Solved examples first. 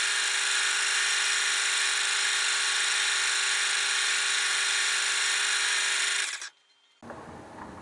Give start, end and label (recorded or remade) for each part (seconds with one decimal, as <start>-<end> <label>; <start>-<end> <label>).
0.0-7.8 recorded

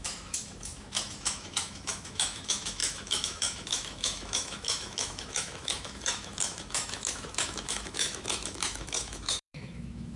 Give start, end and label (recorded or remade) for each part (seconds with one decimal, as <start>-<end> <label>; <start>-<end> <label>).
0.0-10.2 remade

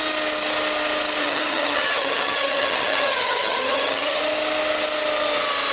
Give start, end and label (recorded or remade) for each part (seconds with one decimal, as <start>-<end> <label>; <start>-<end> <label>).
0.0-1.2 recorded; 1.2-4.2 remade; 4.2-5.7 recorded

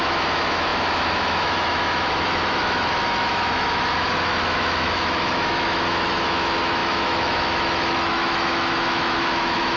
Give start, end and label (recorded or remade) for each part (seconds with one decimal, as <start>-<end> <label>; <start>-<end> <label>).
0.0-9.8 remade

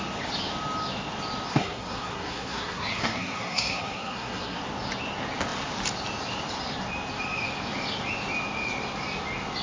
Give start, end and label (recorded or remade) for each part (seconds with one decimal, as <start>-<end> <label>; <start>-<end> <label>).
0.0-1.5 recorded; 1.5-4.6 remade; 4.6-9.6 recorded

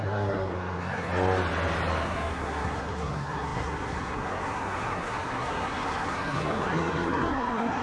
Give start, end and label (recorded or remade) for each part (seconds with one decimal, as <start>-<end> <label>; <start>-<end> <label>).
0.0-1.1 remade; 1.1-2.0 recorded; 2.0-7.8 remade

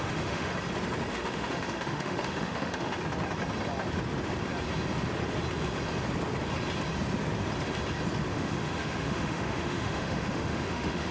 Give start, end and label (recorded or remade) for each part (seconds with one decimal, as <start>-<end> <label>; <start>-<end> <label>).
0.0-0.5 remade; 0.5-1.1 recorded; 1.1-3.0 remade; 3.0-8.3 recorded; 8.3-11.1 remade

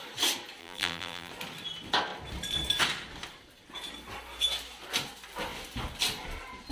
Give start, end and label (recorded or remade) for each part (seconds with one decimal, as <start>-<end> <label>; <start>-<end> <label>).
0.0-0.6 recorded; 0.6-1.3 remade; 1.3-6.7 recorded